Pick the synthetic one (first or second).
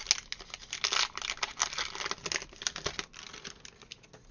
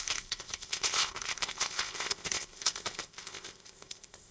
second